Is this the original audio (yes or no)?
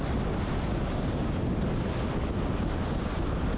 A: yes